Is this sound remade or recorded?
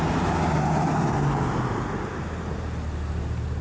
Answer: recorded